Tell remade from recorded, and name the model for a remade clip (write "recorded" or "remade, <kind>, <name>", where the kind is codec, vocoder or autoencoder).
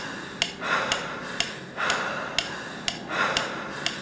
recorded